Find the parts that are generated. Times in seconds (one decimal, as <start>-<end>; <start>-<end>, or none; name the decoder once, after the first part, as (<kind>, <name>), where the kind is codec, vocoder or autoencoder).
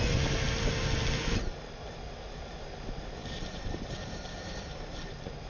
3.2-5.5 (vocoder, BigVGAN v2)